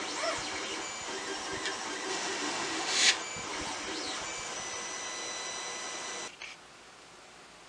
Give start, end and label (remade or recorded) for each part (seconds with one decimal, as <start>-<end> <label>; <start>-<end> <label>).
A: 0.0-2.1 recorded; 2.1-3.1 remade; 3.1-7.7 recorded